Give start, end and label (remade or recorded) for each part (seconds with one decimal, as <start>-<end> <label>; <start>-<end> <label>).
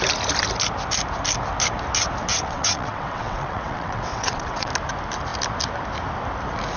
0.0-2.3 recorded; 2.3-4.7 remade; 4.7-6.8 recorded